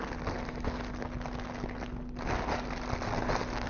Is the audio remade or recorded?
recorded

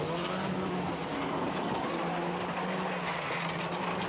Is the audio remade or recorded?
recorded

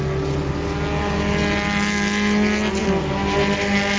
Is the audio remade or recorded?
recorded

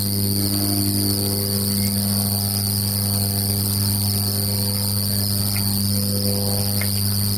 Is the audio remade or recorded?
recorded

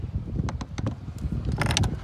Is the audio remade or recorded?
recorded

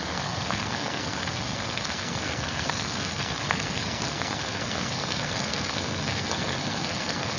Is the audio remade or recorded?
remade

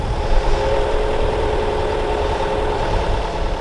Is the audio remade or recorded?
remade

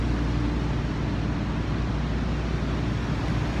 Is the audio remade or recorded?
recorded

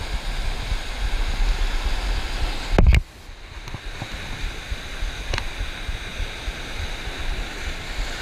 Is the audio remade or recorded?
recorded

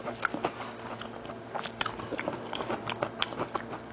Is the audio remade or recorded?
recorded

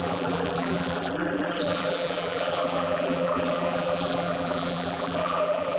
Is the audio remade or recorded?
remade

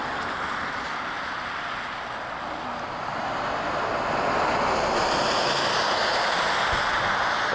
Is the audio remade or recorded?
recorded